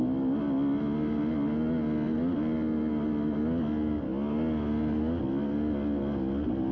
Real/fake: real